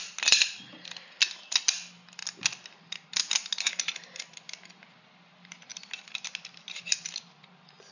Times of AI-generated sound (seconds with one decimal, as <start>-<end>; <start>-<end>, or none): none